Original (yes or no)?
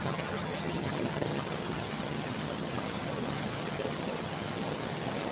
no